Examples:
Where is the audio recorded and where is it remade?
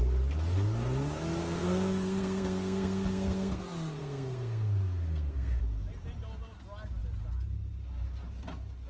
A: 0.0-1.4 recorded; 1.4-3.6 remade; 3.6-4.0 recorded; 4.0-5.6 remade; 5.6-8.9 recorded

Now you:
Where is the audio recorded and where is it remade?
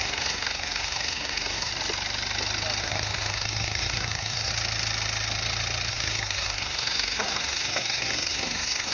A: 0.0-1.7 remade; 1.7-2.8 recorded; 2.8-4.5 remade; 4.5-5.9 recorded; 5.9-8.9 remade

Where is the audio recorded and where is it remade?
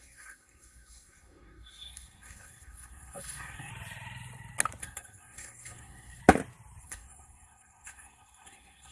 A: 0.0-3.7 remade; 3.7-4.8 recorded; 4.8-6.2 remade; 6.2-6.8 recorded; 6.8-8.9 remade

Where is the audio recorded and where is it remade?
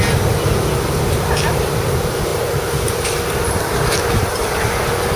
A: 0.0-5.2 recorded